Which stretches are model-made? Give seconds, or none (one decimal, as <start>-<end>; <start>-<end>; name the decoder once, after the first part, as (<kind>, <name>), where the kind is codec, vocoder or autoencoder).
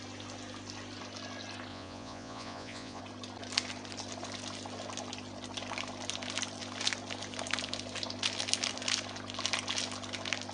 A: 1.7-3.0 (vocoder, Vocos)